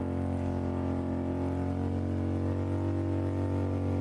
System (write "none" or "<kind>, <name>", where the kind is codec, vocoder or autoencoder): none